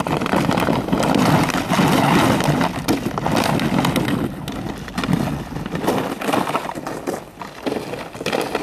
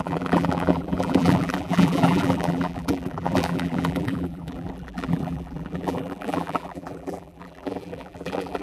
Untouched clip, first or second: first